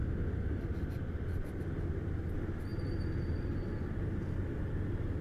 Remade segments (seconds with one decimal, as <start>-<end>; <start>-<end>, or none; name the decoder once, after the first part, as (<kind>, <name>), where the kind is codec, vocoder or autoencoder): none